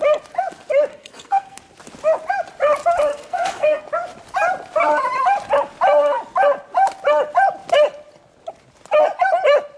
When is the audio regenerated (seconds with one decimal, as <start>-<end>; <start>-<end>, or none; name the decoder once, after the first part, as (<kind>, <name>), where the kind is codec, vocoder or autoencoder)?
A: 0.9-1.6 (codec, SNAC); 3.1-3.8